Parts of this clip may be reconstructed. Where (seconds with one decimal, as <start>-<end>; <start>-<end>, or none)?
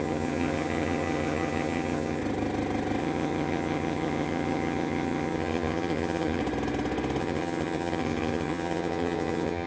0.0-2.2; 3.0-6.4; 7.2-9.7